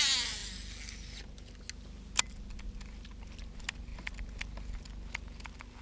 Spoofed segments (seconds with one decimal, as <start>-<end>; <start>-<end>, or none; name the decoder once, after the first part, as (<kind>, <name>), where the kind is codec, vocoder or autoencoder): none